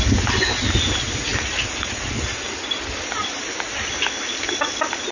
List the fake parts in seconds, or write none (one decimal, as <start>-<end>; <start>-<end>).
none